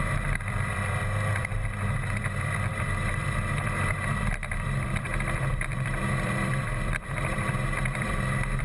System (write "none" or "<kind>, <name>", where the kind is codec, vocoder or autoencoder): vocoder, BigVGAN v2